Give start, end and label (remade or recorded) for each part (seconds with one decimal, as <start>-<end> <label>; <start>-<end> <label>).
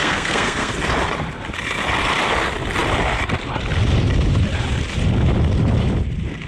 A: 0.0-0.7 remade; 0.7-6.5 recorded